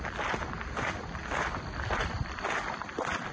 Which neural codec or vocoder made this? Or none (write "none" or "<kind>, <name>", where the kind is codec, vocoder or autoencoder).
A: none